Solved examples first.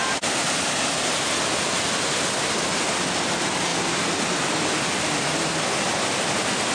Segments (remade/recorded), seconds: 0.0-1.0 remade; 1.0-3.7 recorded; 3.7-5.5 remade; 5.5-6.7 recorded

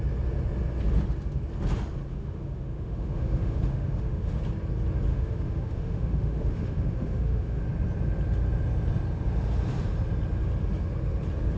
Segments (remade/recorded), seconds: 0.0-2.1 recorded; 2.1-4.4 remade; 4.4-5.1 recorded; 5.1-7.6 remade; 7.6-11.6 recorded

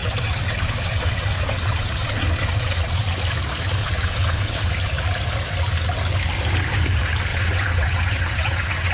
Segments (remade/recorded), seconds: 0.0-3.0 remade; 3.0-3.8 recorded; 3.8-4.7 remade; 4.7-7.3 recorded; 7.3-8.9 remade

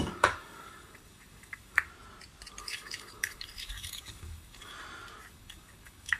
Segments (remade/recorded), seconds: 0.0-1.9 remade; 1.9-2.6 recorded; 2.6-4.7 remade; 4.7-5.3 recorded; 5.3-6.2 remade

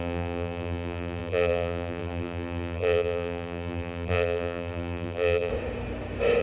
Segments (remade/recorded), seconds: 0.0-5.5 remade; 5.5-6.4 recorded

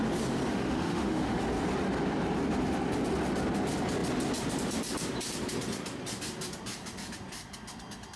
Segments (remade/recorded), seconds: 0.0-0.5 recorded; 0.5-1.4 remade; 1.4-8.2 recorded

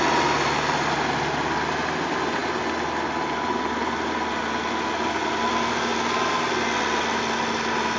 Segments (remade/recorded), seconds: 0.0-8.0 recorded